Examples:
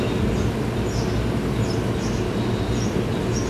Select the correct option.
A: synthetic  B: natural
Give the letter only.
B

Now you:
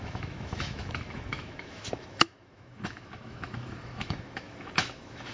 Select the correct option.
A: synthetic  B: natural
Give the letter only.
A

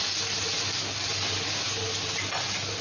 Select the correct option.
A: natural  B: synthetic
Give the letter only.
A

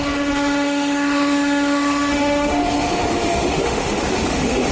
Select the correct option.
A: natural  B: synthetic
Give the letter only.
B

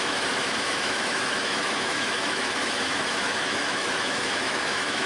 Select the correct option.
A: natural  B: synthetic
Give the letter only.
B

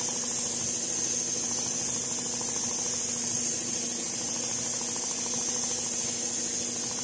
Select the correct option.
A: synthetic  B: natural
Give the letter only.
B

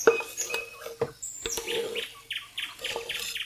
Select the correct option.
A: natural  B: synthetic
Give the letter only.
A